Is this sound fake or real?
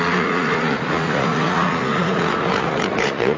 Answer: fake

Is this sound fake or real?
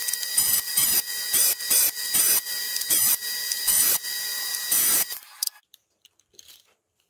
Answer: fake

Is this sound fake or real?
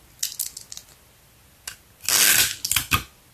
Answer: real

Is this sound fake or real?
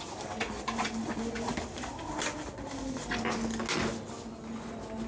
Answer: real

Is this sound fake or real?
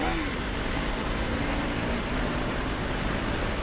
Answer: fake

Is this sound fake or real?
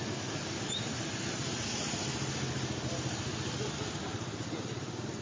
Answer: real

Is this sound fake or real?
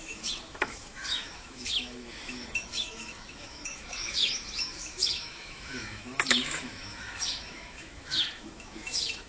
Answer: fake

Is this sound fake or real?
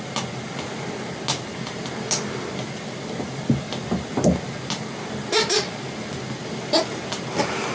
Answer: real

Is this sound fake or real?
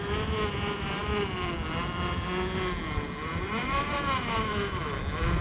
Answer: real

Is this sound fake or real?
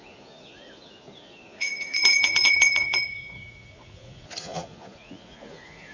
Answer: fake